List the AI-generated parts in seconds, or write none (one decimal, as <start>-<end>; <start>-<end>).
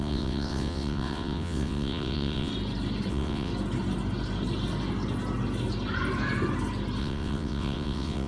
0.0-2.5; 3.1-3.5; 7.0-8.3